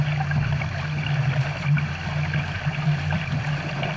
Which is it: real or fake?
real